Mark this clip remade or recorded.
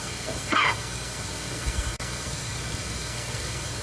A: remade